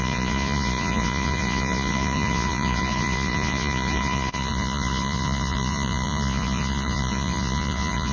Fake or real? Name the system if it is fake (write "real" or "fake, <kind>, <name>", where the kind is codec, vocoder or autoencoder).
fake, vocoder, Vocos